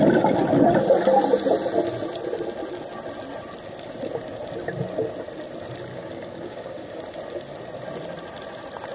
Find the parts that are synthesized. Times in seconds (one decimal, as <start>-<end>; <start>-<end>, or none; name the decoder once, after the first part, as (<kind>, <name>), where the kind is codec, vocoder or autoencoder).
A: 5.9-7.0 (codec, DAC)